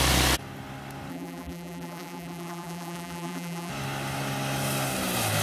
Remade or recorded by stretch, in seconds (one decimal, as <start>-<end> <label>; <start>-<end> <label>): 0.0-1.1 recorded; 1.1-3.7 remade; 3.7-5.4 recorded